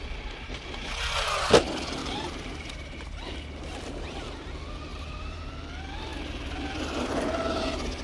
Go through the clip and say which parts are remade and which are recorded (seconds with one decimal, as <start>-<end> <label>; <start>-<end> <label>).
0.0-2.0 recorded; 2.0-2.7 remade; 2.7-4.9 recorded; 4.9-5.4 remade; 5.4-8.0 recorded